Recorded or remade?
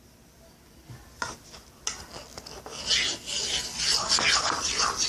recorded